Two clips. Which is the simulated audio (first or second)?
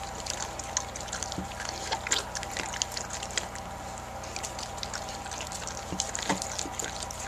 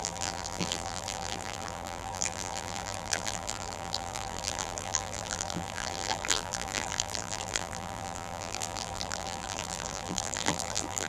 second